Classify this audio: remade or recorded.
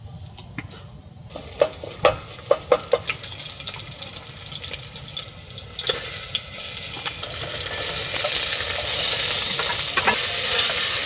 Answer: recorded